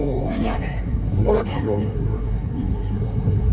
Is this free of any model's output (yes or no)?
no